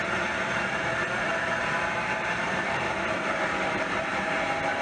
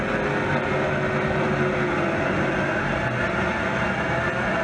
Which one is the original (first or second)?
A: second